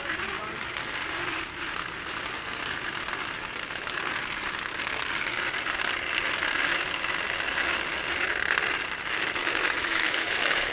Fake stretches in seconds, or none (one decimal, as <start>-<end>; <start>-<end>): 9.4-10.7